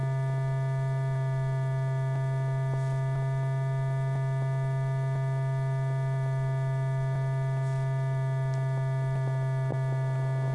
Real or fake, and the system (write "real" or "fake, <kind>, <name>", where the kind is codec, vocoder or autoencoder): real